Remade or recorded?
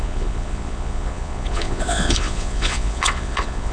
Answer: remade